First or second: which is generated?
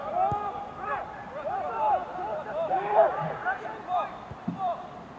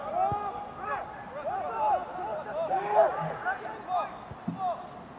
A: first